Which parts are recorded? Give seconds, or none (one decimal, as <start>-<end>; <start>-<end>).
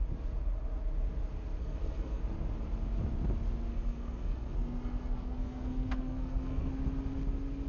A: 0.0-1.6; 2.2-3.7; 6.7-7.7